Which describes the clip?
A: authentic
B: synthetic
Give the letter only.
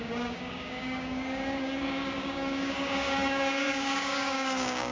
B